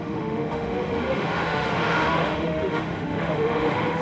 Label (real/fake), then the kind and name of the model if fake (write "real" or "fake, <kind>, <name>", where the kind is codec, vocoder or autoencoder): fake, autoencoder, DAC-VAE